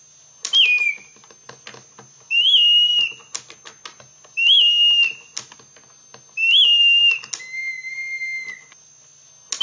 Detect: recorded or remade recorded